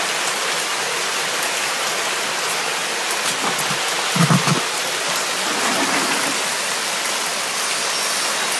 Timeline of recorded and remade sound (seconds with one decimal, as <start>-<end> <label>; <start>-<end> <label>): 0.0-8.6 recorded